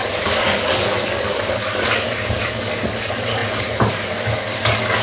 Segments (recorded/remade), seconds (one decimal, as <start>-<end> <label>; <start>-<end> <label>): 0.0-5.0 remade